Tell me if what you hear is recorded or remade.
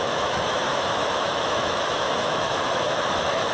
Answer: remade